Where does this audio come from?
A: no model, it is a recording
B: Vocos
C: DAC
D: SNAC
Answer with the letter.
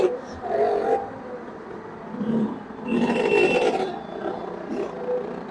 A